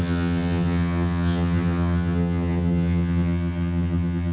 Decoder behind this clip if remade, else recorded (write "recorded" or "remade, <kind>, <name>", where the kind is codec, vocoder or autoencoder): remade, vocoder, HiFi-GAN